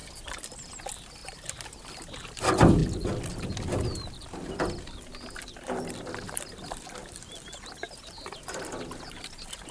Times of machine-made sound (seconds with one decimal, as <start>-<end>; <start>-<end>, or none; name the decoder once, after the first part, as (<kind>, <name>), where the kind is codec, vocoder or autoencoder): none